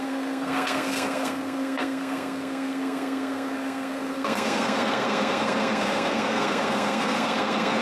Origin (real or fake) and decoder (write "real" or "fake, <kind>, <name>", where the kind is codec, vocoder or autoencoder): fake, codec, SNAC